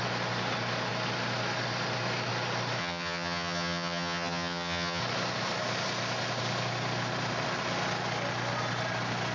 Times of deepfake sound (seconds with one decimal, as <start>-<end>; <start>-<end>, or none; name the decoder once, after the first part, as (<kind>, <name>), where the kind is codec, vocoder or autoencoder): 2.8-5.0 (vocoder, HiFi-GAN)